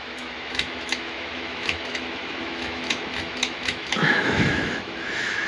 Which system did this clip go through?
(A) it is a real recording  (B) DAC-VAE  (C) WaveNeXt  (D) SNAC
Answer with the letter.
B